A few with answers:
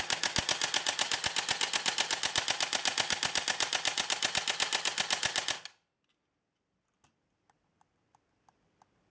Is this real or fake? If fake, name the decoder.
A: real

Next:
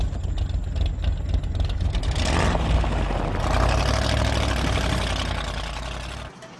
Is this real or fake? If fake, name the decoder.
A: real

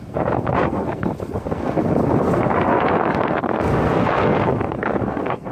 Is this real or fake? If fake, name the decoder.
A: fake, codec, SNAC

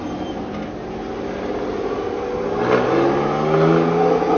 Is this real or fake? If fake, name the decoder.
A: real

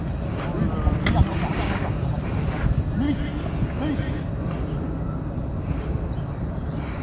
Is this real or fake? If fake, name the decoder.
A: real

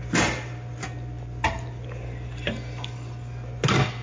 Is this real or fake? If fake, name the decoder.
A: real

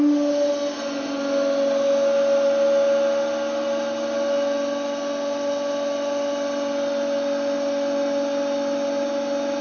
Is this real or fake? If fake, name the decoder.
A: real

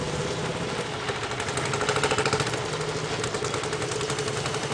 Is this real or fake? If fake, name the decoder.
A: real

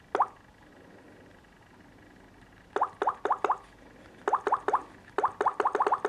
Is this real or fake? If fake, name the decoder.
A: real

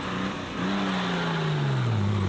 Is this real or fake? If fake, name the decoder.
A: real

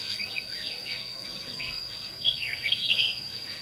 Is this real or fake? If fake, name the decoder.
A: fake, codec, SNAC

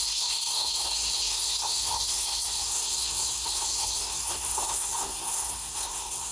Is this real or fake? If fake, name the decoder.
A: fake, codec, SNAC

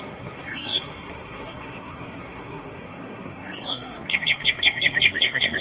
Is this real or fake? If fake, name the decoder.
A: fake, codec, SNAC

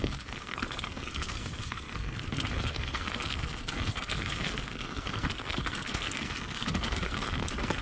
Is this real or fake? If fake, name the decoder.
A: fake, codec, SNAC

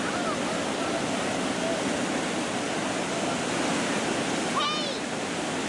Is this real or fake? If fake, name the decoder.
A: real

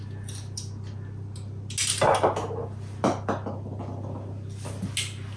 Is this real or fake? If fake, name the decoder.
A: real